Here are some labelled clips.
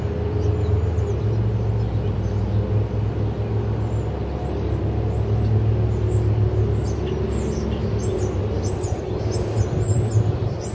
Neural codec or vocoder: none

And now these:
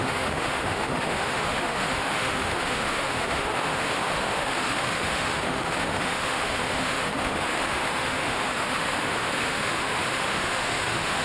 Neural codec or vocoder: autoencoder, DAC-VAE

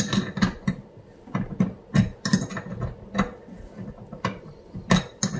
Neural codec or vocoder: none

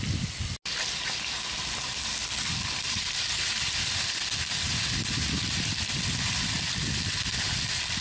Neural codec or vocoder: none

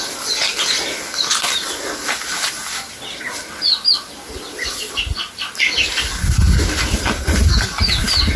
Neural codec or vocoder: none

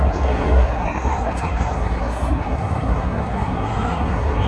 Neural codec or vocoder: codec, SNAC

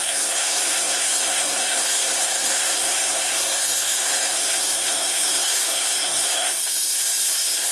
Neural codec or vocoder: codec, SNAC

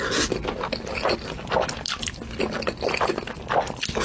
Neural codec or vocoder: none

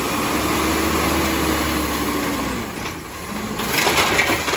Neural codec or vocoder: none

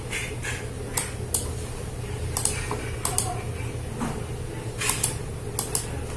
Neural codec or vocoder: none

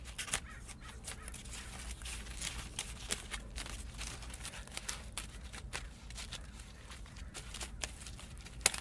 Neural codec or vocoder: none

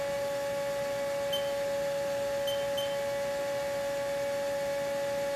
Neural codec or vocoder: none